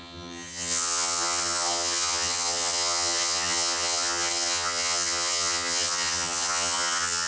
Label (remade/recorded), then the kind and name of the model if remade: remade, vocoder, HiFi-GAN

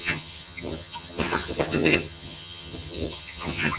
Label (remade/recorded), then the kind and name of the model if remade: remade, vocoder, HiFi-GAN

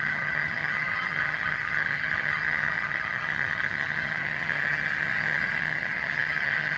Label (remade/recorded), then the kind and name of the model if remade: remade, vocoder, HiFi-GAN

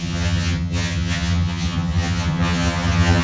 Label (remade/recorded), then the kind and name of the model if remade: remade, vocoder, HiFi-GAN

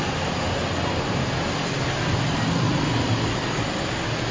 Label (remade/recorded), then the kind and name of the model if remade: recorded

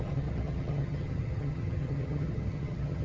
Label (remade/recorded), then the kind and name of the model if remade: remade, vocoder, HiFi-GAN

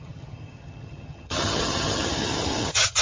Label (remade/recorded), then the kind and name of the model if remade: remade, vocoder, HiFi-GAN